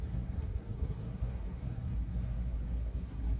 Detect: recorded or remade remade